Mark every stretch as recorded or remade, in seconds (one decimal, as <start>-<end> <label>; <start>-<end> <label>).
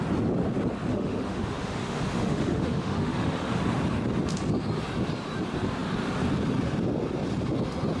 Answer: 0.0-0.9 recorded; 0.9-3.6 remade; 3.6-8.0 recorded